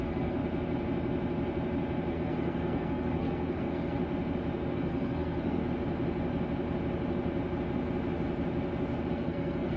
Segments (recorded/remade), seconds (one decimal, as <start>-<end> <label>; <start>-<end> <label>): 0.0-0.4 remade; 0.4-2.1 recorded; 2.1-4.0 remade; 4.0-4.7 recorded; 4.7-5.6 remade; 5.6-9.1 recorded; 9.1-9.8 remade